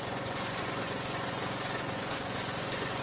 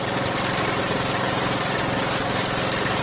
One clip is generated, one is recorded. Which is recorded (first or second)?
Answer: second